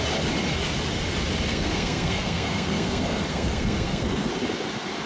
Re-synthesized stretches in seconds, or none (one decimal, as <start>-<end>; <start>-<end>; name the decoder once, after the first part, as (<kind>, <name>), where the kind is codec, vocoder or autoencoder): 1.5-4.3 (codec, SNAC)